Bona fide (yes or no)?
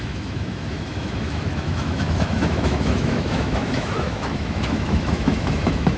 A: no